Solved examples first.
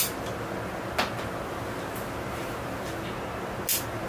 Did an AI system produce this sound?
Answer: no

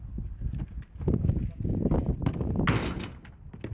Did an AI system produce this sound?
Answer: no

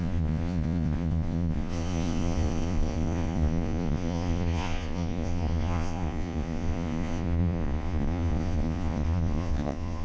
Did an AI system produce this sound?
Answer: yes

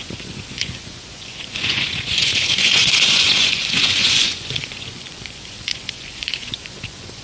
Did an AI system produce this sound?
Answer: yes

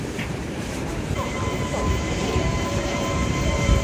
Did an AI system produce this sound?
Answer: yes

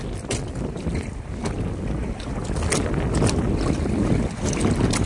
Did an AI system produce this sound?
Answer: no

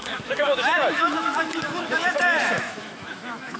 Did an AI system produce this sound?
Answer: yes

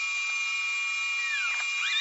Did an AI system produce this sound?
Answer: no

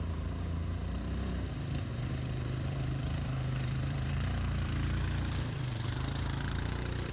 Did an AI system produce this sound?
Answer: yes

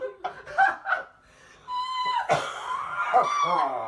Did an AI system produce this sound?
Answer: no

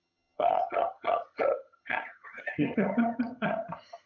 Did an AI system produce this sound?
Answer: yes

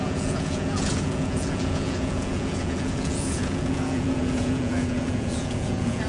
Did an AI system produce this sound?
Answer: yes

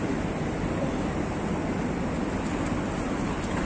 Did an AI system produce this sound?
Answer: no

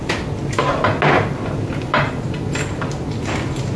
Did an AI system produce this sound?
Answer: no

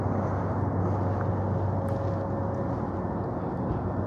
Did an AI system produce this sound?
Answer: no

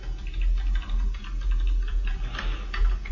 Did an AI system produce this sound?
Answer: no